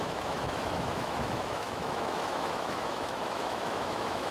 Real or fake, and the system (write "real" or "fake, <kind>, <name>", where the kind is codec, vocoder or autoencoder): fake, autoencoder, DAC-VAE